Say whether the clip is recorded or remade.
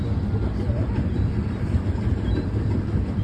remade